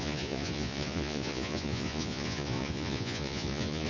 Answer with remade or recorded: remade